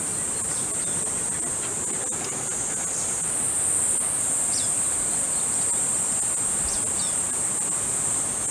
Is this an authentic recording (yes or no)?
yes